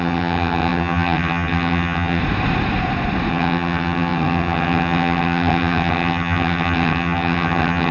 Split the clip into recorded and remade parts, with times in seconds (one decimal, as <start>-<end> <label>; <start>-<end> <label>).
0.0-2.2 remade; 2.2-3.3 recorded; 3.3-7.9 remade